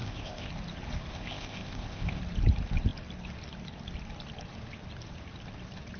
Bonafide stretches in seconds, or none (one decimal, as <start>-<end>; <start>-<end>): 0.5-1.1; 2.2-6.0